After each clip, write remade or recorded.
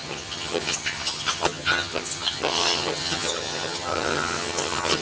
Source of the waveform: remade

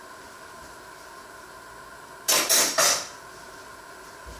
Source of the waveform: recorded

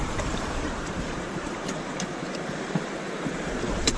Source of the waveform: remade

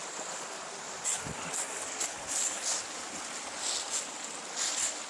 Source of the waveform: recorded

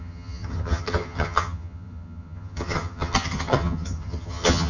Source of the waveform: remade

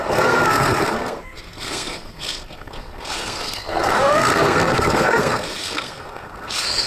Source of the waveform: remade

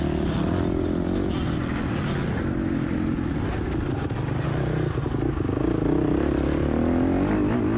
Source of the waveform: recorded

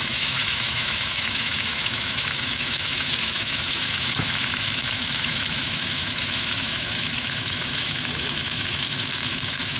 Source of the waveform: remade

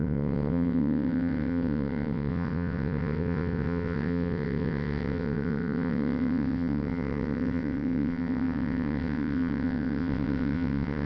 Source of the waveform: remade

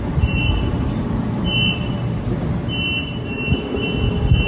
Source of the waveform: recorded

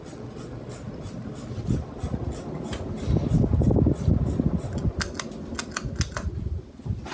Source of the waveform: recorded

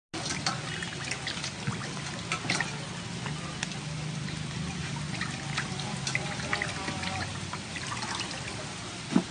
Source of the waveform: recorded